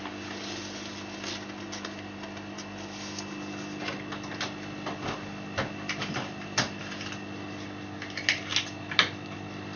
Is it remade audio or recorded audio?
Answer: recorded